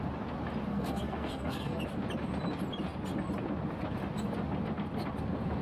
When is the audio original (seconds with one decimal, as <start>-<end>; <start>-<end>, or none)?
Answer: 0.0-0.7; 1.8-5.6